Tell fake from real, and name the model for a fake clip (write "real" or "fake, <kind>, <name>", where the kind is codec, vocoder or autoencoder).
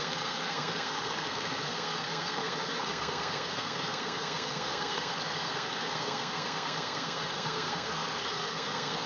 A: fake, codec, SNAC